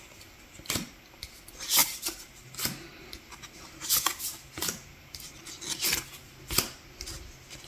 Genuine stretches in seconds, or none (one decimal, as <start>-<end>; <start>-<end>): 0.0-7.7

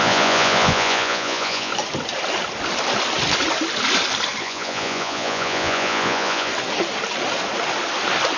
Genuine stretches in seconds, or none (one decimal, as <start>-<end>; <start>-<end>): 1.7-4.4; 6.5-8.4